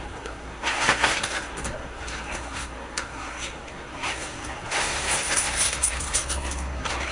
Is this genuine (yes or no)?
no